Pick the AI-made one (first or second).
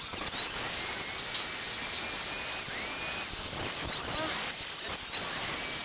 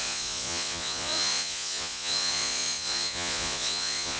second